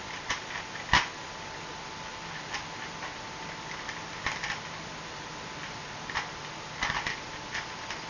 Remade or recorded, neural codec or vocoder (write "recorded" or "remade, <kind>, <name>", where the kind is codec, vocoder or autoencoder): recorded